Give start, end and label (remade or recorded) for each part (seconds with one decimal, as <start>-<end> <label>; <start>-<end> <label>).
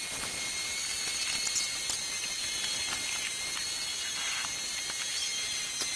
0.0-6.0 recorded